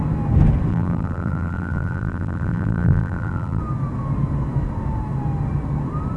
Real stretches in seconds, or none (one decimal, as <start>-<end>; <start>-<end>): 0.0-0.7; 3.6-6.2